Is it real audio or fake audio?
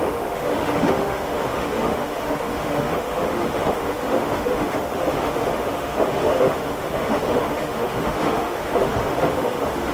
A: fake